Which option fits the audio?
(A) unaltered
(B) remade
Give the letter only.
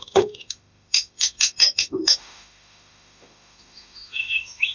B